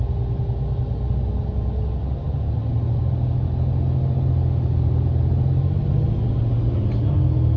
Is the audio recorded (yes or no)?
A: yes